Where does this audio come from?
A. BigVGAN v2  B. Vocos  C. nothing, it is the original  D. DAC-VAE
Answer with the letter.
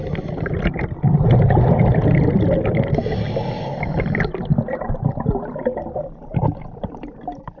C